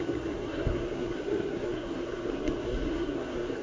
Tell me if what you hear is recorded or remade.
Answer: remade